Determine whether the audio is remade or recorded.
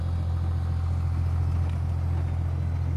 recorded